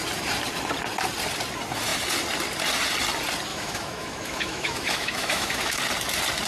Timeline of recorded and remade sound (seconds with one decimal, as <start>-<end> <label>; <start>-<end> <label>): 0.0-3.5 recorded; 3.5-5.8 remade; 5.8-6.5 recorded